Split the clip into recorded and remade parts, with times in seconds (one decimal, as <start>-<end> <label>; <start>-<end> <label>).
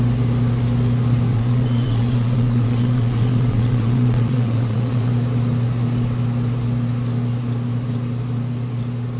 0.0-1.3 recorded; 1.3-5.1 remade; 5.1-9.2 recorded